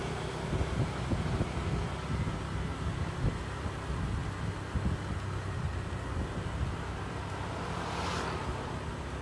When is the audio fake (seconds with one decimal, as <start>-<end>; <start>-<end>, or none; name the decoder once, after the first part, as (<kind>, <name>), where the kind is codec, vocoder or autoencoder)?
none